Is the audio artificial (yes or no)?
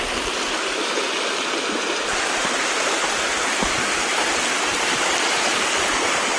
no